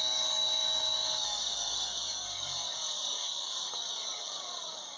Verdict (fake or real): fake